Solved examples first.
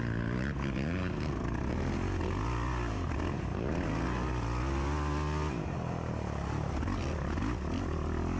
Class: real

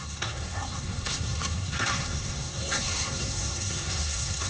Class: fake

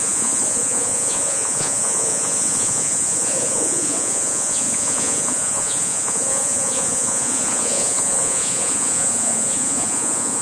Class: fake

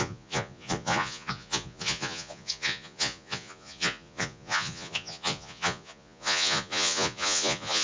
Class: fake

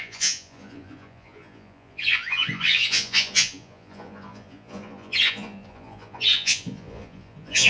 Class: fake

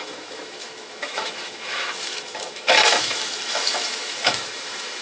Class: fake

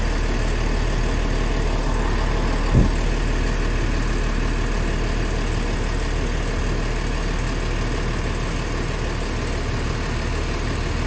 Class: real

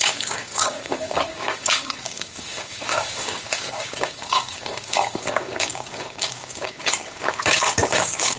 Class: fake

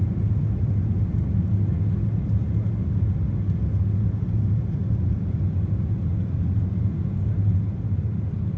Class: real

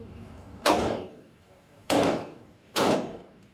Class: fake